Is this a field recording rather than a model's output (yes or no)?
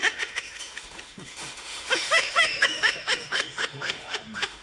no